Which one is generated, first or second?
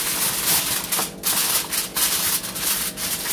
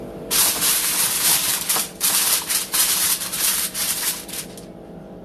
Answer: second